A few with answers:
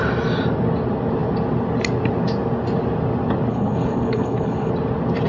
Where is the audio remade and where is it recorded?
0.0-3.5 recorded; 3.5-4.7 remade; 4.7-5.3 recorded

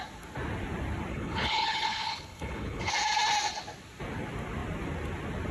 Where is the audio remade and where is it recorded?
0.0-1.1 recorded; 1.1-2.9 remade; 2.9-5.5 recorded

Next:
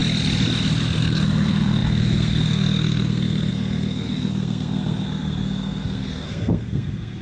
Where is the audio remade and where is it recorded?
0.0-1.0 recorded; 1.0-7.2 remade

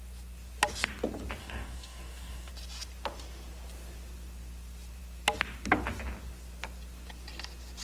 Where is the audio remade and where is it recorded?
0.0-1.4 recorded; 1.4-2.5 remade; 2.5-7.8 recorded

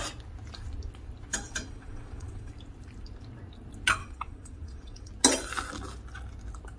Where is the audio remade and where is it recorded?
0.0-1.3 recorded; 1.3-2.5 remade; 2.5-4.0 recorded; 4.0-5.1 remade; 5.1-6.8 recorded